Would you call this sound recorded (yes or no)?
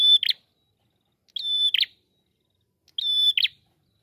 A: yes